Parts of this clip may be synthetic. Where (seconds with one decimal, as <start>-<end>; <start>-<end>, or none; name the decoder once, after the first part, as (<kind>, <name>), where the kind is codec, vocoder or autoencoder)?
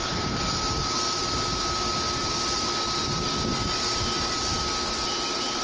none